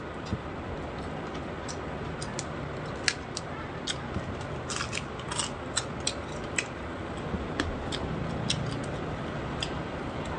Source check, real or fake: real